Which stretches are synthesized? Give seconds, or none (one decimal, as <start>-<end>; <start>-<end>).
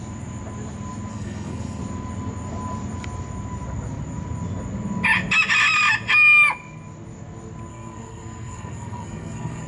1.1-1.8; 7.7-9.7